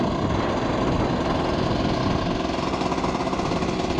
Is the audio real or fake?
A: real